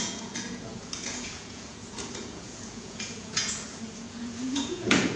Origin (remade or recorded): remade